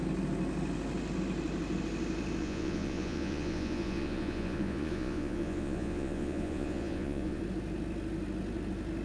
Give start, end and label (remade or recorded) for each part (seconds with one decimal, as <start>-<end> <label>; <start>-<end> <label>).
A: 0.0-2.4 recorded; 2.4-7.4 remade; 7.4-9.0 recorded